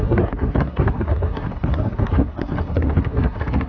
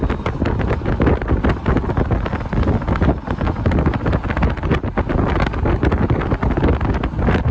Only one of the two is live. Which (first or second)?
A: second